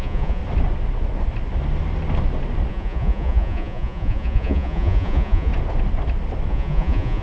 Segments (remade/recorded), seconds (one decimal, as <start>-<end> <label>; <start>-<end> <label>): 0.0-0.4 remade; 0.4-2.7 recorded; 2.7-5.5 remade; 5.5-6.5 recorded; 6.5-7.2 remade